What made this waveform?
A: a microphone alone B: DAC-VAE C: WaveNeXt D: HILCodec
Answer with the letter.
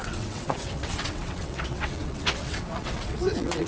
C